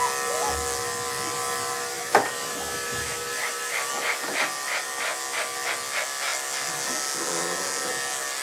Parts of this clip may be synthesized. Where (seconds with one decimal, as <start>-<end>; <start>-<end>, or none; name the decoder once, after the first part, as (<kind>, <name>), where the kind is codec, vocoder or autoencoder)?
1.3-3.9 (vocoder, BigVGAN v2)